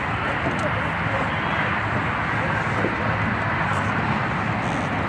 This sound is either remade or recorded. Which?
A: recorded